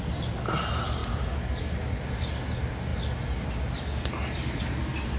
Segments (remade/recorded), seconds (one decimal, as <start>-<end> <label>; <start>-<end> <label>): 0.0-5.2 recorded

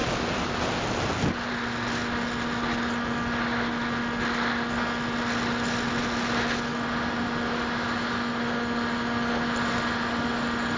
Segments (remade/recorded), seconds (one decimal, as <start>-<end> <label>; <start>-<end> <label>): 0.0-10.8 recorded

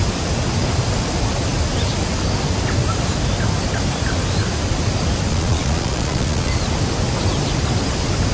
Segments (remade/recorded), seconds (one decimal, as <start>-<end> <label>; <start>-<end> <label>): 0.0-5.3 recorded; 5.3-6.5 remade; 6.5-8.3 recorded

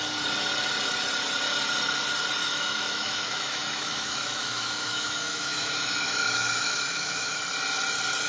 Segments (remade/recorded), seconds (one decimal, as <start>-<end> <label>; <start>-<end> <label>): 0.0-2.4 recorded; 2.4-7.4 remade; 7.4-8.3 recorded